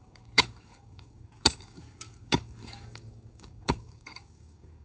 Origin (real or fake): fake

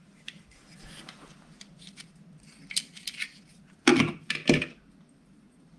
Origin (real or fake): real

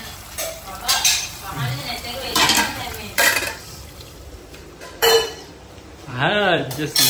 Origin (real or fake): fake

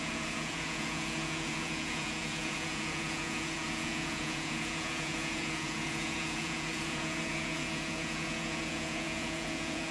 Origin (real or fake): fake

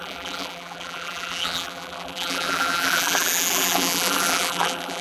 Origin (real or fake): fake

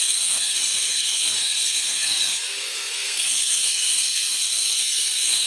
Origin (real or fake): fake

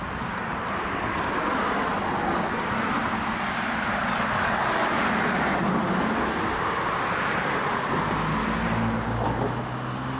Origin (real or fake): real